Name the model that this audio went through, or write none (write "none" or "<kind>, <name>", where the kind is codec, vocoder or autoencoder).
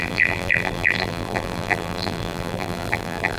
vocoder, BigVGAN v2